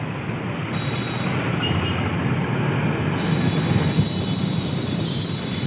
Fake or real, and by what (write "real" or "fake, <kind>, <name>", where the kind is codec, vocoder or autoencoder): real